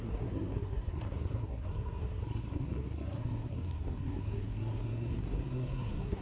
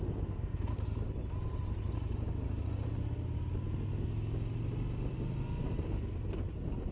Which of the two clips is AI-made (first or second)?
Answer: first